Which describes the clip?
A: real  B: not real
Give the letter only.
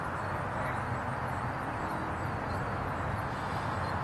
A